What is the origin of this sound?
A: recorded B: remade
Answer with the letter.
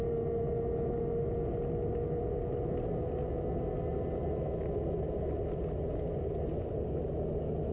A